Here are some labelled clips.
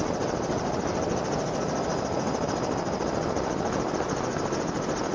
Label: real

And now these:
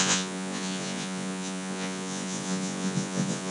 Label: fake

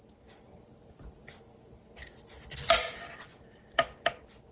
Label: real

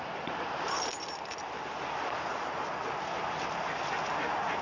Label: real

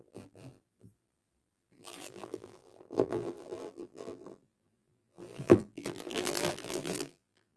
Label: fake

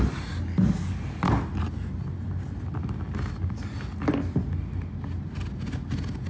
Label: real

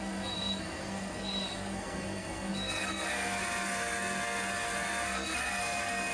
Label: fake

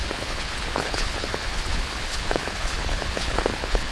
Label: fake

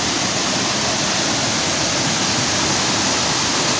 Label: real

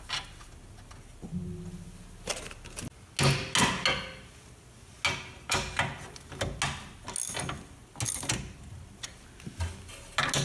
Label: real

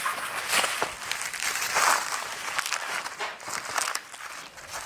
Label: real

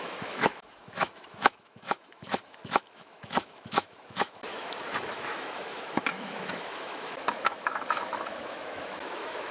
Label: fake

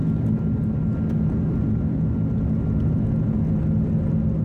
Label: real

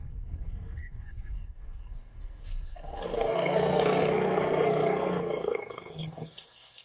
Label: fake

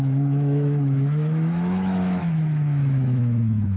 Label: fake